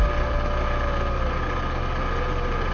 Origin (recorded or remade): recorded